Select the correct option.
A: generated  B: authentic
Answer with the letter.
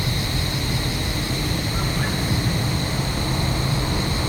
B